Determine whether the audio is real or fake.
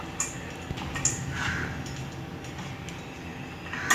real